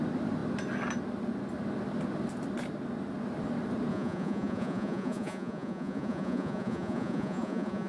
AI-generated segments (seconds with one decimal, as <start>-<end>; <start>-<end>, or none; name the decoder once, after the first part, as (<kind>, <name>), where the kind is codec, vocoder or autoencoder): 3.9-7.9 (vocoder, Vocos)